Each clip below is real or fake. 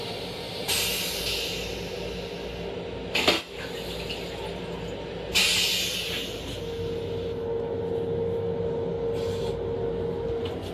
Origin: real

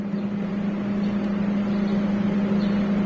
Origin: real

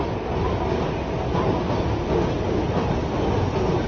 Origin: real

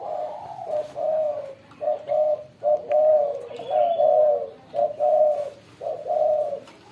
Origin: real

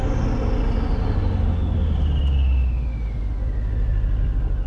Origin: real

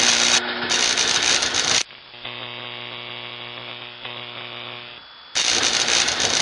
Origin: real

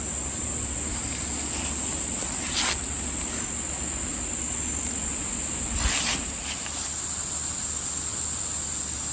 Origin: real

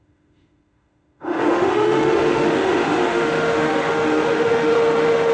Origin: fake